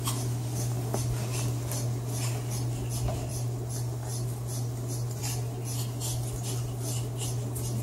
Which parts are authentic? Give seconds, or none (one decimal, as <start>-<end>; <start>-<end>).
0.0-7.8